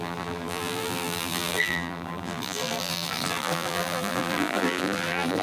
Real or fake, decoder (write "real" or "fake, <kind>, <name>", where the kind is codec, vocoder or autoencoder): fake, vocoder, BigVGAN v2